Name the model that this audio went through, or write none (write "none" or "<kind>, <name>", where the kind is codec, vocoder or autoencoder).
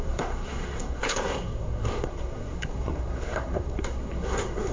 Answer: codec, SNAC